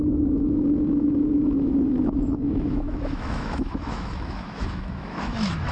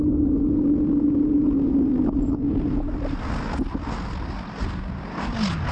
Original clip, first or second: second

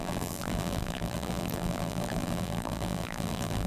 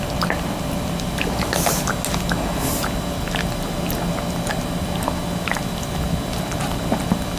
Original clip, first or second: second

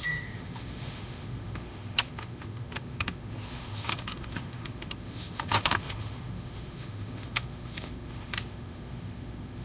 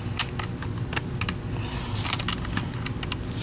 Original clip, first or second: second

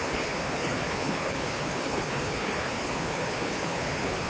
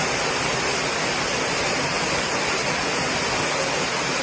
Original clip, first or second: second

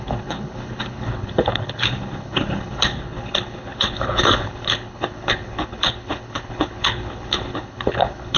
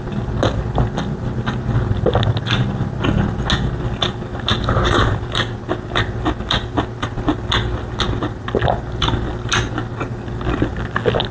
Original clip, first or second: second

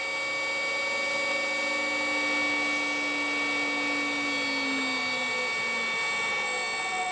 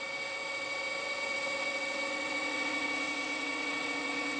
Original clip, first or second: first